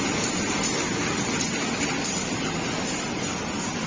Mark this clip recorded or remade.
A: remade